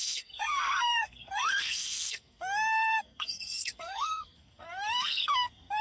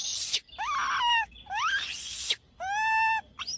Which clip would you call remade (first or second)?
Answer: first